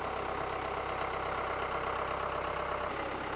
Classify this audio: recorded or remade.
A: recorded